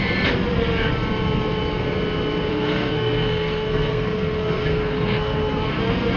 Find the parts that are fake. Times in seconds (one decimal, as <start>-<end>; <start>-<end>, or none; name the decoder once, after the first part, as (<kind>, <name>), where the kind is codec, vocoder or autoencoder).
2.5-5.8 (codec, SNAC)